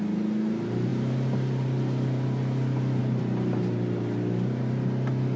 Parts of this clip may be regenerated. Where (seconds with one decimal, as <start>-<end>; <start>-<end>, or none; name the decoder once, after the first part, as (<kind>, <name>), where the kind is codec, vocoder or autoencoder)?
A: none